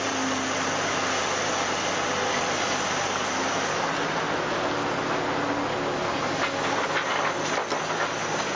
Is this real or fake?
real